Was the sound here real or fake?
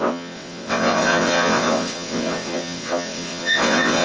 fake